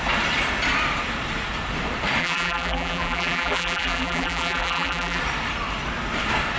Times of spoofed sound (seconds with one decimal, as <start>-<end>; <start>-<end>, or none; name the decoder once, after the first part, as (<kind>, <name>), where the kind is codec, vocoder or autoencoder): 2.2-5.2 (vocoder, BigVGAN v2)